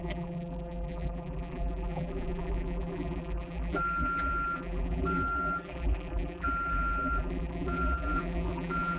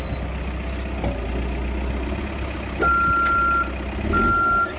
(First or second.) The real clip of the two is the second